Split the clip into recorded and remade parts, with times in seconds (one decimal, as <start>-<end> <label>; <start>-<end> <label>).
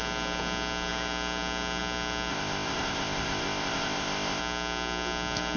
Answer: 0.0-2.3 recorded; 2.3-4.4 remade; 4.4-5.6 recorded